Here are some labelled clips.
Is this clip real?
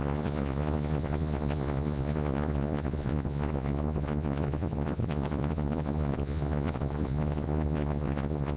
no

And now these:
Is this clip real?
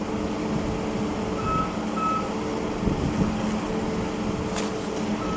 yes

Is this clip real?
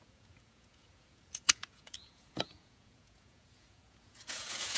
no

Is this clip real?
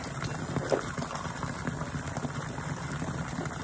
yes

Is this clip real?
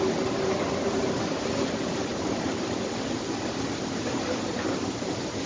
yes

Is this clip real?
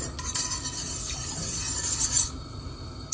yes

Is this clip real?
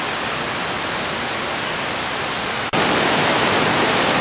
yes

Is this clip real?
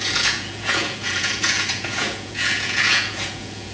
no